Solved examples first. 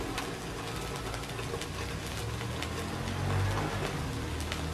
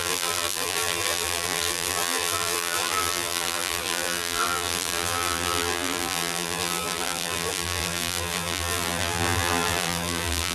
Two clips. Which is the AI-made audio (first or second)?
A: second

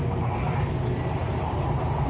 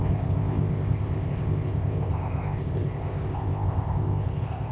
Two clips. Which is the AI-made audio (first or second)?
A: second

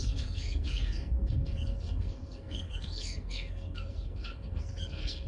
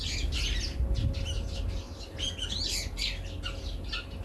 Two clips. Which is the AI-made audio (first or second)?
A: first